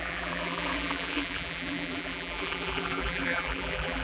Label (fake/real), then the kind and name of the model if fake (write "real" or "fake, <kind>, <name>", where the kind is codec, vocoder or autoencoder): fake, vocoder, BigVGAN v2